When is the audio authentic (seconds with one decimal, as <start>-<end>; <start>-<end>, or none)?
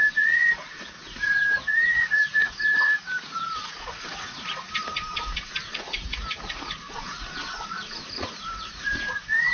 none